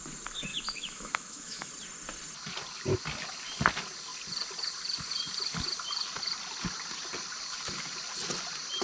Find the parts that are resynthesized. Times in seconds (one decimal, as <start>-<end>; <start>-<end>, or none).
0.5-1.7